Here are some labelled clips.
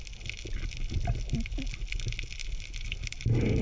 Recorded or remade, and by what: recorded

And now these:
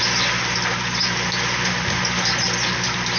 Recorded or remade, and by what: recorded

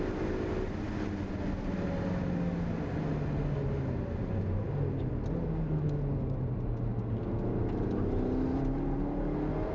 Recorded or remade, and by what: recorded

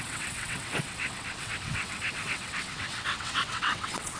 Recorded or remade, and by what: remade, vocoder, WaveNeXt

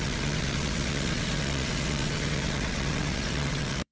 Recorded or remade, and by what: remade, vocoder, WaveNeXt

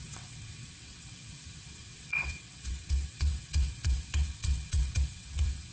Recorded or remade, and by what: remade, vocoder, WaveNeXt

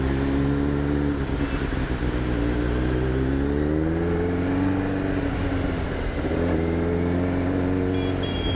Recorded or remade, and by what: recorded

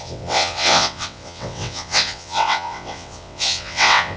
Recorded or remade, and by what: remade, vocoder, WaveNeXt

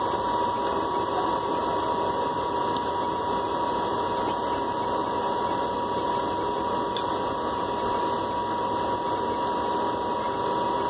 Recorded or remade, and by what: recorded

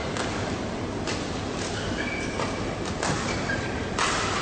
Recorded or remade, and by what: recorded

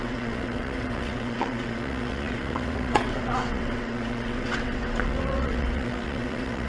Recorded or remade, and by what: remade, vocoder, WaveNeXt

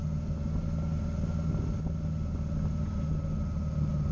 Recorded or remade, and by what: recorded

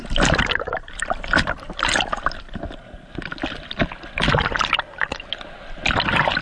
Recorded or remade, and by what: recorded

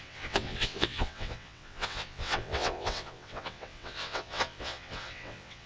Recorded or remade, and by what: remade, vocoder, WaveNeXt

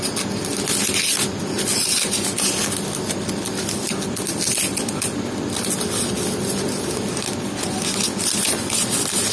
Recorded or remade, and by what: recorded